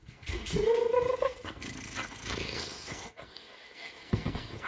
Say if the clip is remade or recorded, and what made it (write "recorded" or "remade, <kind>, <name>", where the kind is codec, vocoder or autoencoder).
remade, codec, SNAC